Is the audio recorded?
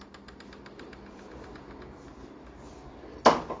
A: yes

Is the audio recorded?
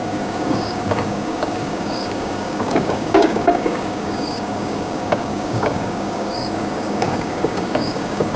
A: no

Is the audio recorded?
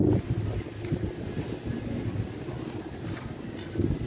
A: yes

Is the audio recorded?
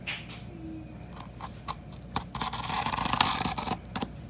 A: yes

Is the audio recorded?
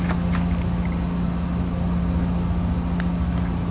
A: yes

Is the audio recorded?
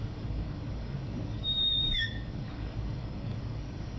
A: no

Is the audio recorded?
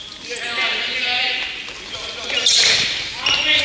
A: yes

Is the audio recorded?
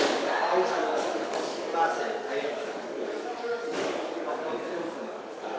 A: no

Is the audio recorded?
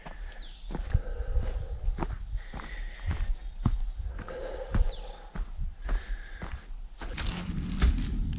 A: yes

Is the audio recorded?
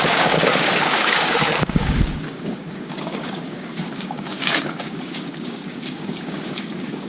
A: no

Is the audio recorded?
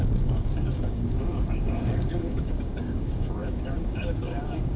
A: no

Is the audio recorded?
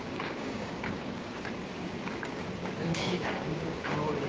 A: no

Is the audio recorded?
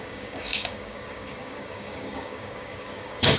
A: no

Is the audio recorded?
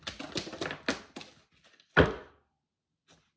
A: yes